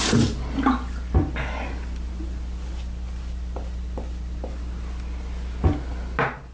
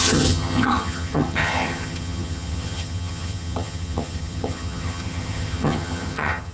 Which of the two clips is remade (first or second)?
second